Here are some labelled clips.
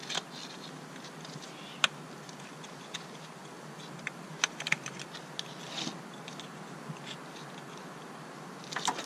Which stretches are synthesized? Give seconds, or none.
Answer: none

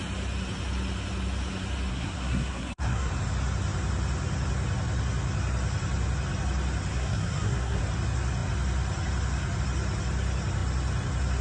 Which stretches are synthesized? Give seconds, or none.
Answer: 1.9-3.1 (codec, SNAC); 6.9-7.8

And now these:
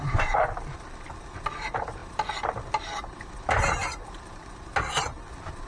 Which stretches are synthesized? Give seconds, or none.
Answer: none

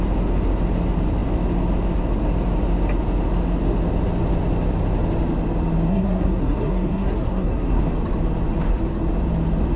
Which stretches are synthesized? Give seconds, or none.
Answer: 5.9-7.8 (codec, SNAC)

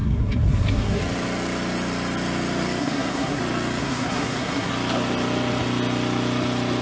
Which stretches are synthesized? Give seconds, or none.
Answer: 0.0-1.0 (codec, SNAC); 2.8-3.4; 3.8-4.7